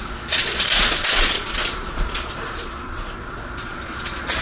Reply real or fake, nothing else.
fake